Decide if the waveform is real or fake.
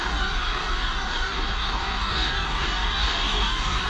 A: fake